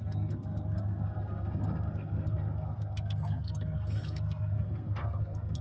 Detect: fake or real fake